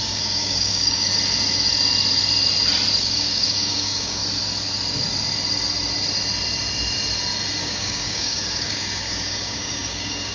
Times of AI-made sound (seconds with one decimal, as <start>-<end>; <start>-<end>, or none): 0.0-1.1; 3.0-4.2; 7.6-10.3